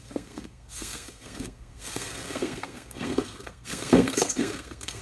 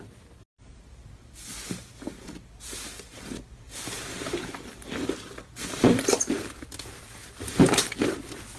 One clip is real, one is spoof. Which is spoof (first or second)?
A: first